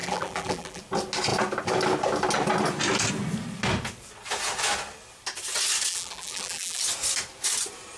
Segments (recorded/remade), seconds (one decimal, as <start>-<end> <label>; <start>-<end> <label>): 0.0-0.8 remade; 0.8-5.9 recorded; 5.9-6.8 remade; 6.8-8.0 recorded